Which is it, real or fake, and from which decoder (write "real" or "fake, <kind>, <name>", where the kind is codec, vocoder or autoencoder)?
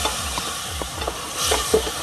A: real